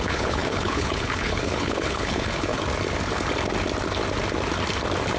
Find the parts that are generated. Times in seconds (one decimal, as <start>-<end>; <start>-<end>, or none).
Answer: 0.0-2.5